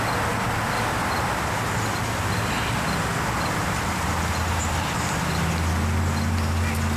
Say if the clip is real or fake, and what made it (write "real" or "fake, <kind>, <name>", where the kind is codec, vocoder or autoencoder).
real